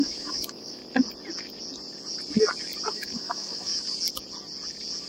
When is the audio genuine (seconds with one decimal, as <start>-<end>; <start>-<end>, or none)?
0.8-2.9; 3.7-5.1